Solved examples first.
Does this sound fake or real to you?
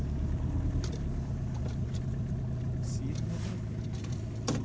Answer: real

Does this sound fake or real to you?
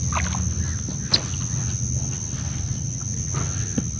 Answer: real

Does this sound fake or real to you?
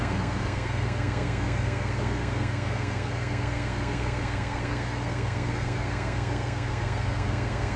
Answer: fake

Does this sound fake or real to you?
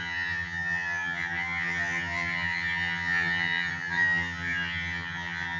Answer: fake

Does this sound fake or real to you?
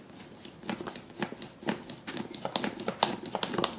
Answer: real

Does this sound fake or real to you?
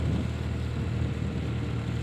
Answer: real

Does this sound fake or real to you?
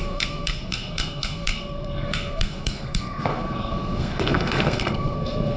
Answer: fake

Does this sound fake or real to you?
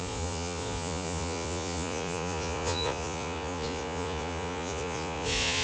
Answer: fake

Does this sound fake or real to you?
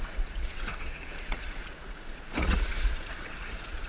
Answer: fake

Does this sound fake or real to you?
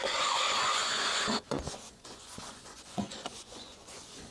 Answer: fake